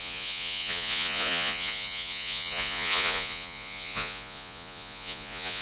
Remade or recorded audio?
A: remade